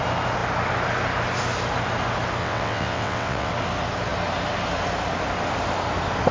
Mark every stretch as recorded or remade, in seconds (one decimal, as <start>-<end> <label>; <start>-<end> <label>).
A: 0.0-2.4 recorded; 2.4-3.5 remade; 3.5-6.3 recorded